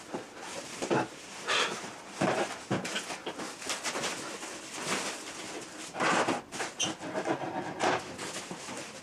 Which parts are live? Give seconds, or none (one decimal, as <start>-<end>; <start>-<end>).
0.0-0.5; 2.8-9.0